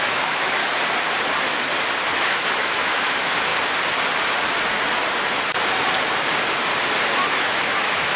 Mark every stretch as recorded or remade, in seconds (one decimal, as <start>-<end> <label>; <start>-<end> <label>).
0.0-0.6 remade; 0.6-2.1 recorded; 2.1-3.5 remade; 3.5-7.3 recorded; 7.3-8.2 remade